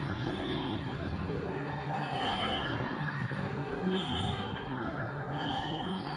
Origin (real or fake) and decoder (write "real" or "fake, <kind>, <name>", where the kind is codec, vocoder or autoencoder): fake, codec, SNAC